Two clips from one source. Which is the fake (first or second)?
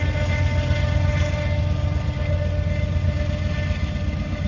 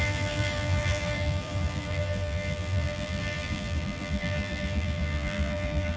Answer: second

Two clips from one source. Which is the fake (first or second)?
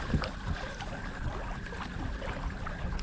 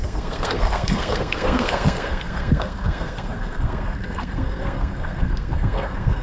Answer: second